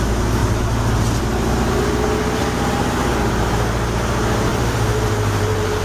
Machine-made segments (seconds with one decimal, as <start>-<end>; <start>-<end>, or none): 4.5-5.8